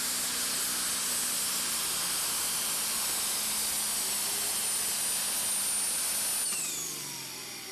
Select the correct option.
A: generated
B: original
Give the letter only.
B